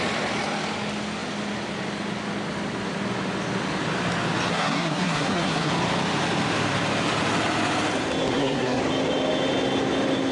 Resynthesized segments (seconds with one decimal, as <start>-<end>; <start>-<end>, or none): 4.5-5.7; 8.3-8.8